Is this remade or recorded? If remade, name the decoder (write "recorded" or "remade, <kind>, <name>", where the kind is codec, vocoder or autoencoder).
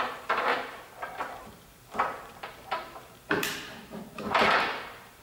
remade, vocoder, BigVGAN v2